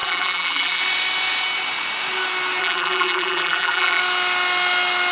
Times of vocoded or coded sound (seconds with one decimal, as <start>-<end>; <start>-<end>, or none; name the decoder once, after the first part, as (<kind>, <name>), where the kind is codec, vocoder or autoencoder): 0.0-0.8 (vocoder, BigVGAN v2); 2.6-4.0